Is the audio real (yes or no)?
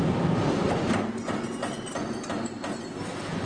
yes